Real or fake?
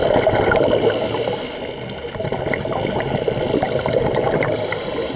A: real